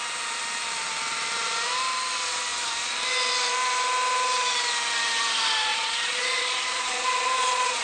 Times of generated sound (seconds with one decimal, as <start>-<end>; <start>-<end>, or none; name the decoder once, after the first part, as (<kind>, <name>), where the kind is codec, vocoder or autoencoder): 5.7-7.8 (vocoder, Vocos)